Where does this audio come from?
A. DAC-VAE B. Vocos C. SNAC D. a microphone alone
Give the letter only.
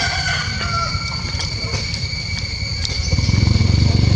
D